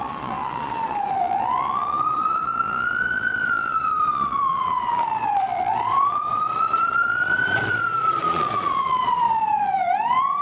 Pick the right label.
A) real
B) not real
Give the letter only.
B